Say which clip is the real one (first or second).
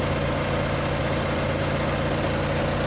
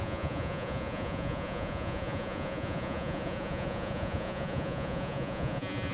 first